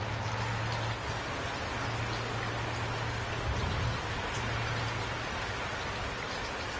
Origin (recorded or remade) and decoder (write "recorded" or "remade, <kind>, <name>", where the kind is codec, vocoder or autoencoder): recorded